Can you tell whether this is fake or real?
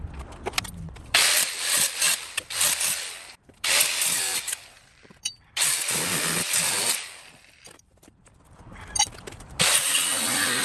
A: fake